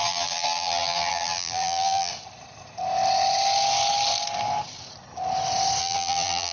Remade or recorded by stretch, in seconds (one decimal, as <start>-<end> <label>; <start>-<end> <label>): 0.0-2.1 remade; 2.1-5.8 recorded; 5.8-6.5 remade